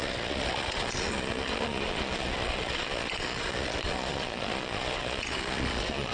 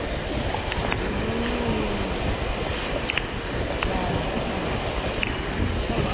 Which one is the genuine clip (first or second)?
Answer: second